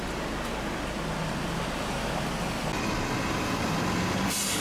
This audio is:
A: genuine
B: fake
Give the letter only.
A